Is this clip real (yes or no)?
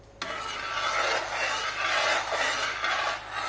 yes